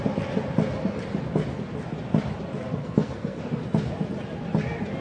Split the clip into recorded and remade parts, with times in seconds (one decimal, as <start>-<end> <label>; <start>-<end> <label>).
0.0-2.8 recorded; 2.8-3.4 remade; 3.4-5.0 recorded